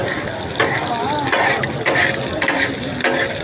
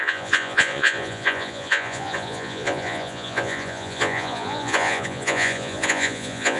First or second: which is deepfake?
second